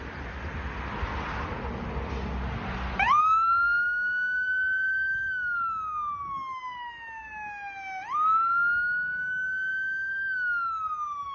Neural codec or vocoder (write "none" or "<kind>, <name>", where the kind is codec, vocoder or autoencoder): none